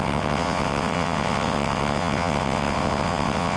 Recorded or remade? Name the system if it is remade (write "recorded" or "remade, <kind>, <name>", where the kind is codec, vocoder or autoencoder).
remade, vocoder, WaveNeXt